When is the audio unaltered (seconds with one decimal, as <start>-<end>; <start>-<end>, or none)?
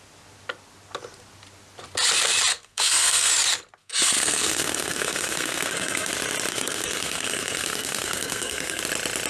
0.0-2.5; 3.3-3.8; 6.1-6.5; 8.8-9.3